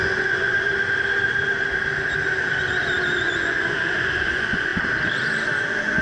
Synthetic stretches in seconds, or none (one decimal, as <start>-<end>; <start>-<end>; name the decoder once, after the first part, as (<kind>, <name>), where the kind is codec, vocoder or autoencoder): 0.0-0.7 (vocoder, Vocos); 3.2-4.7; 5.6-6.0